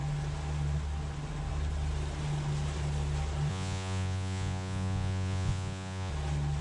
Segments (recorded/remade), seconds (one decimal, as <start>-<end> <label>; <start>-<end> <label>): 0.0-3.5 recorded; 3.5-6.1 remade; 6.1-6.6 recorded